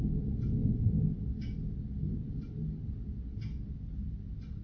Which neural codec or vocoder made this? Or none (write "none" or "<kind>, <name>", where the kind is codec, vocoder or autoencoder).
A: none